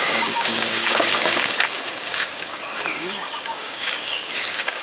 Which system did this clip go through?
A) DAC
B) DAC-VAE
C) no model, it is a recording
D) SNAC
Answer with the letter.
A